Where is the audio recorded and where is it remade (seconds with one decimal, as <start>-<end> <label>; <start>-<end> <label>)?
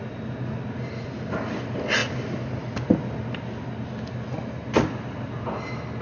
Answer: 0.0-6.0 recorded